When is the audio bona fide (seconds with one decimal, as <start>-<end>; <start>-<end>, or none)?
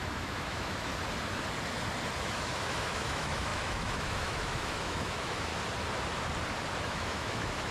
0.9-2.2; 5.5-6.8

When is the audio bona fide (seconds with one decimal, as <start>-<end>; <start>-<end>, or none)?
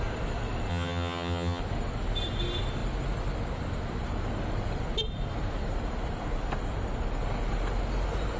0.0-0.7; 1.6-8.4